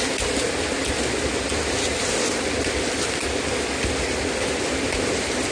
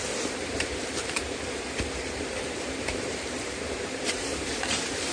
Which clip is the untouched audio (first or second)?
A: first